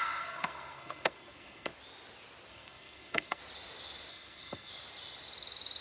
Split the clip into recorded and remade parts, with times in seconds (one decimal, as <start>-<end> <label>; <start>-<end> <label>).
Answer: 0.0-1.7 remade; 1.7-2.5 recorded; 2.5-3.4 remade; 3.4-4.1 recorded; 4.1-4.7 remade; 4.7-5.8 recorded